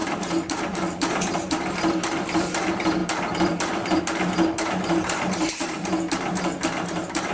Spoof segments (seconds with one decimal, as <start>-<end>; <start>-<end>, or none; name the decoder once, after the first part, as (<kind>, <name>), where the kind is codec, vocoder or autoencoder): 0.0-7.3 (vocoder, BigVGAN v2)